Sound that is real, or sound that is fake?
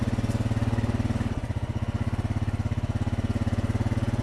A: real